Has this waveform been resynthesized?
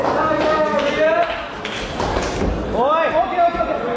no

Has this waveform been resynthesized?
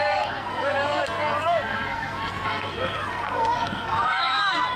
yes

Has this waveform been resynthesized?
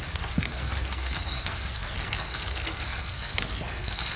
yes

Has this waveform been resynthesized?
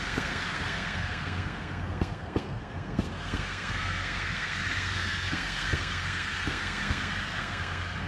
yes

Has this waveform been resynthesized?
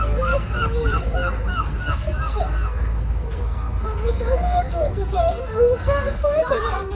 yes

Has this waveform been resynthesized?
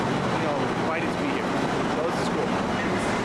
no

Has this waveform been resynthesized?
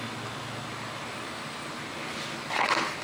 no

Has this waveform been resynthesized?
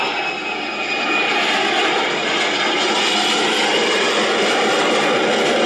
no